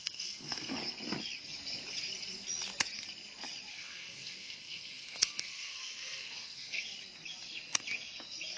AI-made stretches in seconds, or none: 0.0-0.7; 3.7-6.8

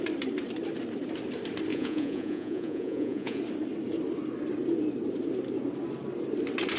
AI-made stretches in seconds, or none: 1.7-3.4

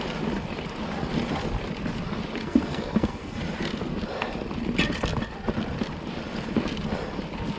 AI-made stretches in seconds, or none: 2.4-3.4

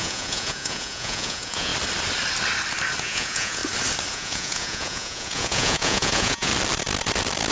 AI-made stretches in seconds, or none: 0.0-1.7; 3.0-3.6; 4.1-6.5

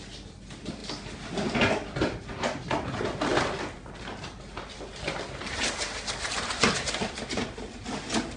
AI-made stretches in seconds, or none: 3.3-4.2; 6.3-8.0

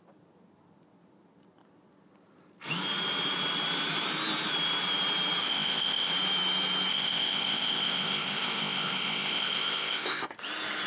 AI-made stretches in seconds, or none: 5.4-6.1; 6.9-10.3

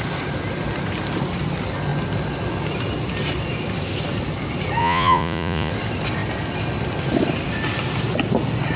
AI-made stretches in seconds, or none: 4.8-5.7

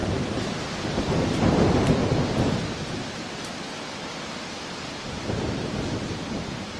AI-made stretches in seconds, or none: 0.0-1.1; 2.0-6.1